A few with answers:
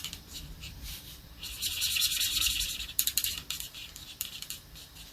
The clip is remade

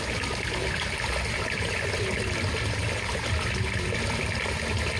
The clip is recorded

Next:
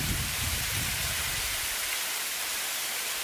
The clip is remade